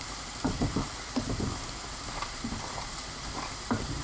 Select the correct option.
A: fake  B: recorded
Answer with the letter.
A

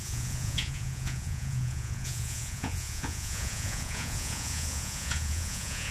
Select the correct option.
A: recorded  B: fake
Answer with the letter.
B